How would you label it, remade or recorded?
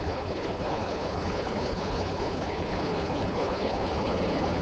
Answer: remade